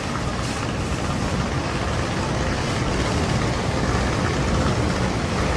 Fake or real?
real